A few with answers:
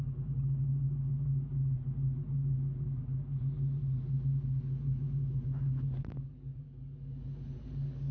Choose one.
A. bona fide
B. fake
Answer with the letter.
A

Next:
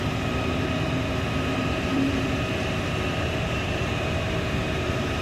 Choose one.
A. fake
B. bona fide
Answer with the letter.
A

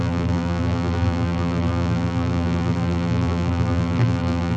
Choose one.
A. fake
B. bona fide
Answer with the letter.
A